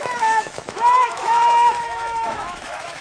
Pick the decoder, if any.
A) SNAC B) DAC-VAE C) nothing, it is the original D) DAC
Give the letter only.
B